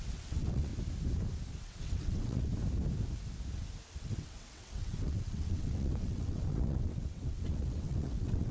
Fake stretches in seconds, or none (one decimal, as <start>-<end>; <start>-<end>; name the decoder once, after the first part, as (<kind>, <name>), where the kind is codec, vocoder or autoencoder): 0.0-0.7 (vocoder, WaveNeXt); 1.6-2.5; 4.0-8.5